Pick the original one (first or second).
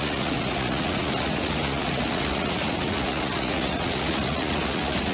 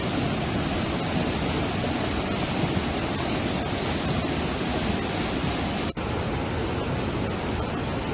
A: second